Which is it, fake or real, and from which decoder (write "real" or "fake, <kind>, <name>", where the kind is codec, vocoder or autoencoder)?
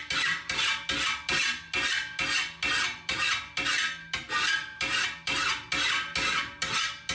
real